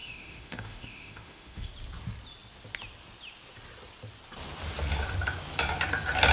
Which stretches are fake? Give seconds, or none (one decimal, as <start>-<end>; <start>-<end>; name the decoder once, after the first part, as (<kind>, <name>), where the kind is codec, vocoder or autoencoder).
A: 0.0-1.7 (autoencoder, DAC-VAE)